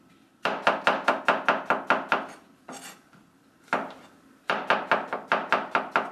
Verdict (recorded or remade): recorded